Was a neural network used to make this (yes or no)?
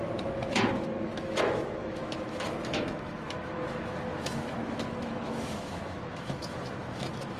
yes